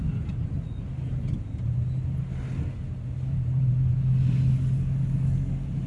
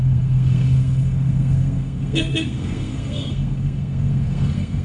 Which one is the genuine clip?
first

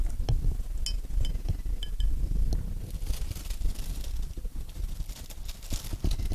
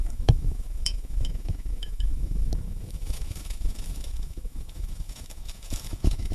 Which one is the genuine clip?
first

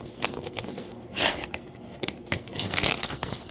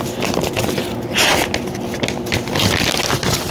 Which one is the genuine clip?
second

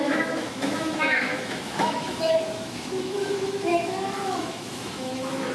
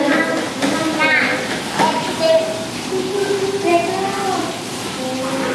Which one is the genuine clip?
second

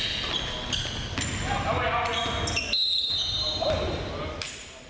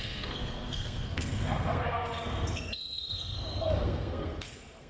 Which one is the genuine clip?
first